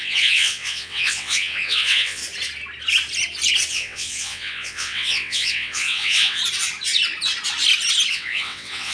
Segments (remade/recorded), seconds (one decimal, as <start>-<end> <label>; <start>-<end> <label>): 0.0-2.2 remade; 2.2-3.7 recorded; 3.7-6.4 remade; 6.4-8.1 recorded; 8.1-8.9 remade